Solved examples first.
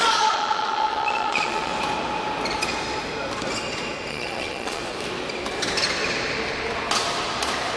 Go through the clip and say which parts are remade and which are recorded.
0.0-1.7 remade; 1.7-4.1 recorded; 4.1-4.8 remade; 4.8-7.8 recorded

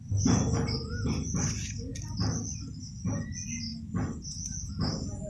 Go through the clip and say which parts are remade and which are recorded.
0.0-5.3 recorded

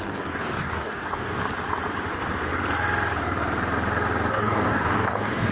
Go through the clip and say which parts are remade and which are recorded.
0.0-1.4 remade; 1.4-4.3 recorded; 4.3-5.5 remade

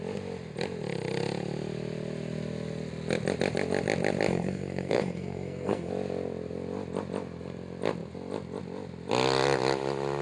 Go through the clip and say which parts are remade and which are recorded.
0.0-4.3 recorded; 4.3-5.9 remade; 5.9-10.2 recorded

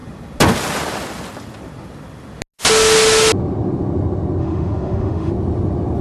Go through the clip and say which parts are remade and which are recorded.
0.0-4.4 recorded; 4.4-5.3 remade; 5.3-6.0 recorded

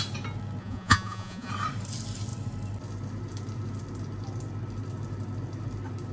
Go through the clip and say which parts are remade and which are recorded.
0.0-0.6 recorded; 0.6-1.5 remade; 1.5-6.1 recorded

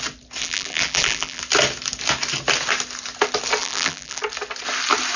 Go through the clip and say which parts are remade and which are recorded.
0.0-0.4 recorded; 0.4-1.4 remade; 1.4-3.6 recorded; 3.6-4.2 remade; 4.2-5.2 recorded

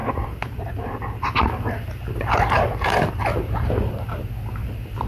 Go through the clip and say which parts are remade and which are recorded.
0.0-5.1 recorded